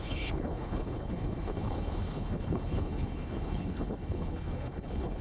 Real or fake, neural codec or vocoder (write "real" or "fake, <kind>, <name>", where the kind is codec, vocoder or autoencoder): fake, codec, HILCodec